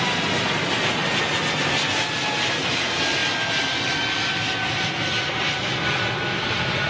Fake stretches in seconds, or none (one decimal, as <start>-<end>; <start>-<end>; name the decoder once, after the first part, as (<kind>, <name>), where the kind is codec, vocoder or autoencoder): none